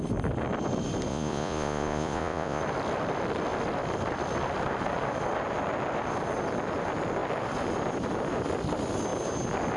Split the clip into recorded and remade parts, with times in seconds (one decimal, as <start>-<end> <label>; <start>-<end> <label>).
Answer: 0.0-1.1 recorded; 1.1-2.6 remade; 2.6-9.8 recorded